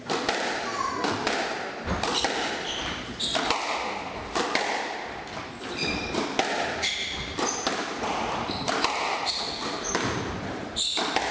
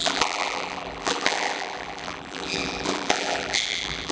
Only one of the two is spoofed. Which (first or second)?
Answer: second